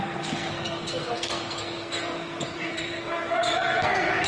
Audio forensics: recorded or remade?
remade